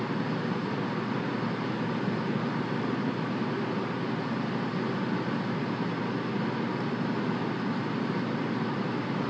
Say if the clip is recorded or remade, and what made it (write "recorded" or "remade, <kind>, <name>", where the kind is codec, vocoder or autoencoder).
recorded